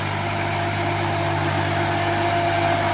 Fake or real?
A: real